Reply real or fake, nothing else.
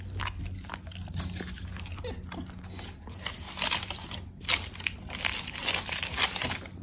real